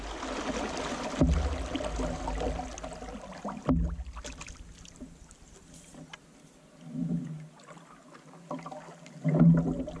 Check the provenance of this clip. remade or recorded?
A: recorded